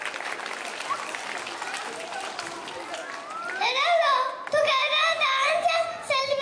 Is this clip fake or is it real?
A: real